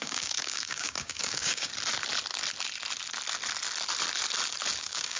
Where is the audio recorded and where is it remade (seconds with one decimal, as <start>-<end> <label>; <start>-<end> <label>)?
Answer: 0.0-1.7 remade; 1.7-4.8 recorded; 4.8-5.2 remade